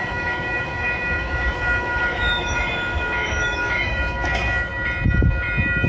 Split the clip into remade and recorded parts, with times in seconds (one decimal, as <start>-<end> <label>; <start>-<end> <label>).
0.0-4.7 remade; 4.7-5.9 recorded